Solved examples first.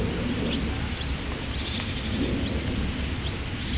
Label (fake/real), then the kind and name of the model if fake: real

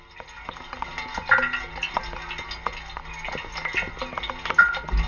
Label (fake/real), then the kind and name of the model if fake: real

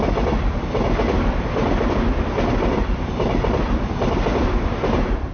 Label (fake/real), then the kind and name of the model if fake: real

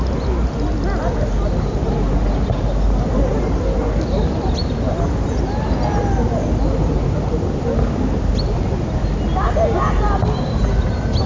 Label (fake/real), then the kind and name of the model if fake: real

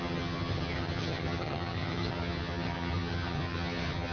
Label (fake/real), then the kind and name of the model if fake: fake, vocoder, HiFi-GAN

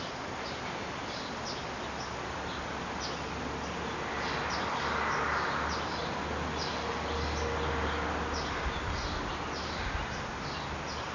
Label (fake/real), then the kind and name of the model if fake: real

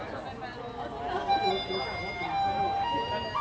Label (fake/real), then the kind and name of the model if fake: real